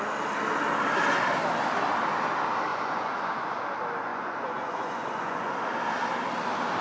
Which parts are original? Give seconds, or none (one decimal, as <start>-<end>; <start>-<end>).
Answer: 0.0-2.7; 3.6-4.1; 5.5-6.8